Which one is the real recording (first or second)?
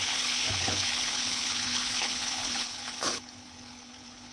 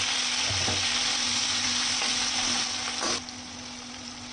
second